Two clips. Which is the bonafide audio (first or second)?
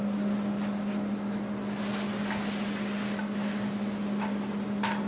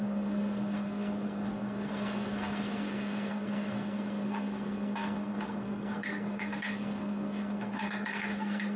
first